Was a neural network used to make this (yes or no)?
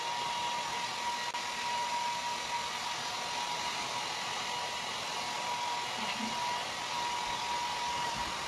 no